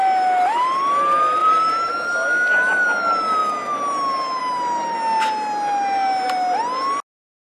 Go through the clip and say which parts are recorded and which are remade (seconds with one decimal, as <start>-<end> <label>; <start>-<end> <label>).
0.0-1.4 recorded; 1.4-1.9 remade; 1.9-7.5 recorded